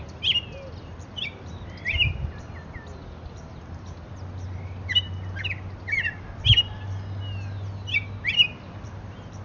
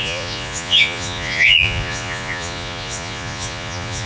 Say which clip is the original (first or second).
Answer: first